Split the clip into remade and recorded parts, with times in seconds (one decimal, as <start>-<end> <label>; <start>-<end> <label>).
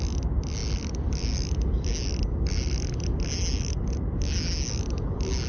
0.0-5.5 recorded